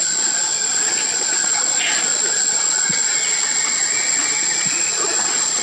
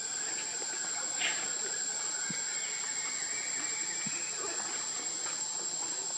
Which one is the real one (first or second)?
second